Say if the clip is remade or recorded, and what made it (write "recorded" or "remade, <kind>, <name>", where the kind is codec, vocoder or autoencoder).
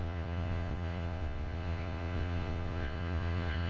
remade, vocoder, Vocos